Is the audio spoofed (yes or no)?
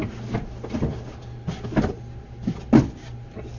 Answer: no